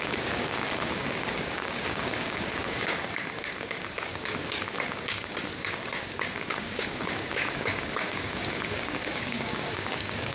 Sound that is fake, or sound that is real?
fake